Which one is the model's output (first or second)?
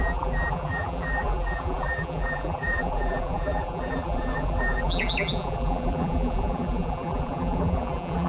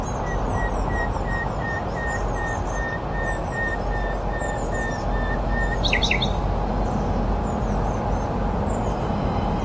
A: first